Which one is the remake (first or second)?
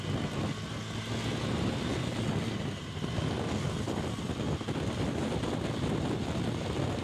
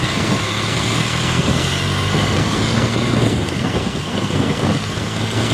second